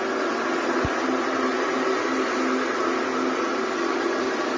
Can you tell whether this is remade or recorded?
recorded